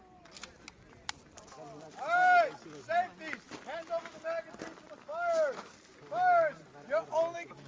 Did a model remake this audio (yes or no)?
no